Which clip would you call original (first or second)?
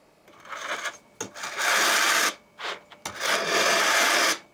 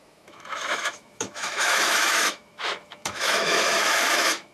first